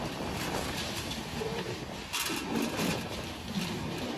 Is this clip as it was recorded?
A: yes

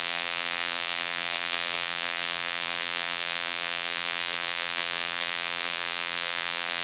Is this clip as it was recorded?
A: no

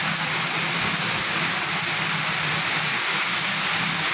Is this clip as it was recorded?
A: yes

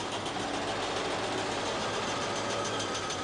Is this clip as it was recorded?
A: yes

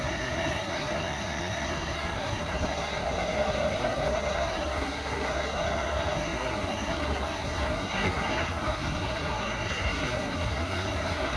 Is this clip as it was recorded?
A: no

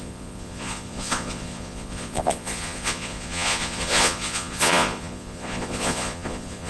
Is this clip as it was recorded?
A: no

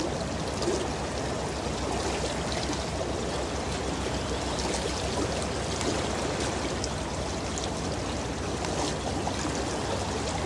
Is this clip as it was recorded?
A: yes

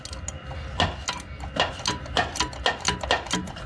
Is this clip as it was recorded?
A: yes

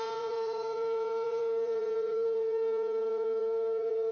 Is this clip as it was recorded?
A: no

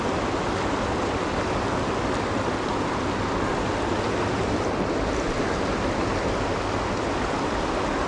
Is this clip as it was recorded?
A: yes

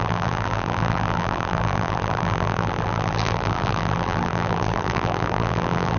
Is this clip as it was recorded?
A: no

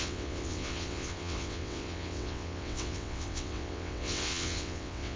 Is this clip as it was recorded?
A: no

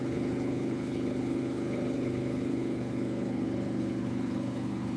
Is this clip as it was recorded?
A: no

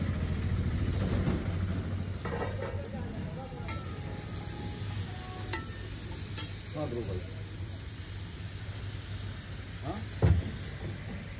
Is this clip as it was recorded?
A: yes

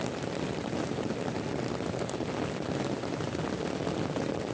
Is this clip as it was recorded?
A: yes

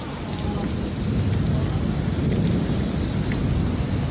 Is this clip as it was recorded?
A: yes